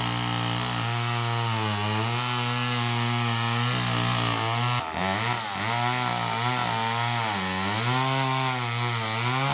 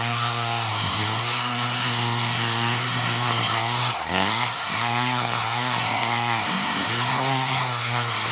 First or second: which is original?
first